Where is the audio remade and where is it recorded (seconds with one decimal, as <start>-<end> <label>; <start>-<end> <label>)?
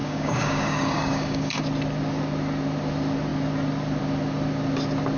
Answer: 0.0-1.6 remade; 1.6-5.2 recorded